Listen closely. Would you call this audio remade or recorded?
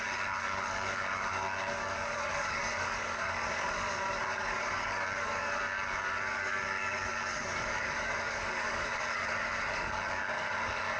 remade